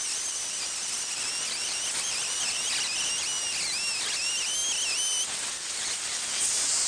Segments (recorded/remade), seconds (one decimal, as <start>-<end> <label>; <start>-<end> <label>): 0.0-6.9 recorded